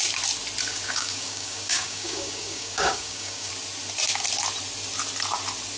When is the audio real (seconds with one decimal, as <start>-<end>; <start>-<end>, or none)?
0.0-0.7; 3.5-5.8